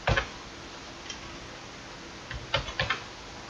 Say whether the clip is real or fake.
real